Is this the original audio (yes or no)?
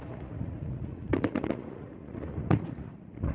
no